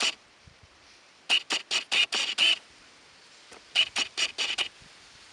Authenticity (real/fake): real